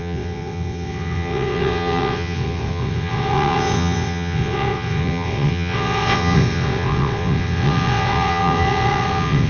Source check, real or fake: fake